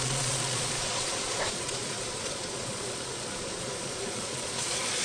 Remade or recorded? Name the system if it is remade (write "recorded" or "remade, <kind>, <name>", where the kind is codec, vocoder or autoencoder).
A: remade, vocoder, Vocos